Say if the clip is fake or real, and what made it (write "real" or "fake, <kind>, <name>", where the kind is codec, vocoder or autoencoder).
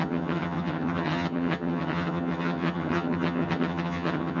fake, vocoder, HiFi-GAN